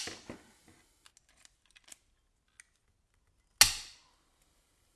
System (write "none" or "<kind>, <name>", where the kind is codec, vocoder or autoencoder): none